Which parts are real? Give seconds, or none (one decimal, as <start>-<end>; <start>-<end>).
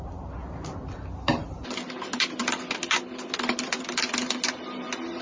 0.0-5.2